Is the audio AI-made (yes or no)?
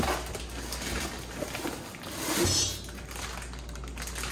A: no